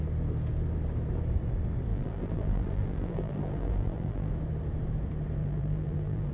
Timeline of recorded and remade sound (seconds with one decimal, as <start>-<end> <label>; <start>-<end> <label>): 0.0-1.9 recorded; 1.9-4.3 remade; 4.3-5.4 recorded; 5.4-6.3 remade